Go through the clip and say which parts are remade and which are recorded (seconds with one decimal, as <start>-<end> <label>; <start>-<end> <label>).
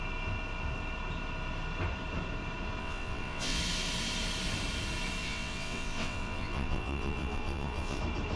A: 0.0-2.8 recorded; 2.8-3.6 remade; 3.6-5.2 recorded; 5.2-8.0 remade; 8.0-8.4 recorded